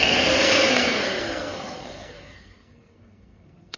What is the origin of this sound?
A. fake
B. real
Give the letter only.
A